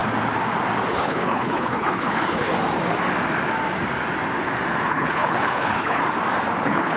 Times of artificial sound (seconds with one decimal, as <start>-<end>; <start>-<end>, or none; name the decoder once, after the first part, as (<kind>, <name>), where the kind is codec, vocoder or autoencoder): 0.9-2.5 (codec, HILCodec); 4.9-6.0; 6.6-7.0